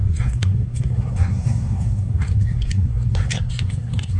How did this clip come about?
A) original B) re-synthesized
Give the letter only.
B